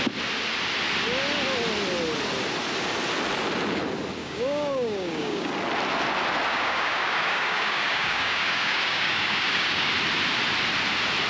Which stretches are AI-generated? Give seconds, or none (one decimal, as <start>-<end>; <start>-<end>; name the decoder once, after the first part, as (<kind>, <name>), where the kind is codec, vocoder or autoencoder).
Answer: 4.2-5.5 (codec, DAC); 6.5-9.9